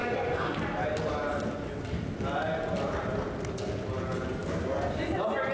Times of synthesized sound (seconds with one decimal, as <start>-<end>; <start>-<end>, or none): none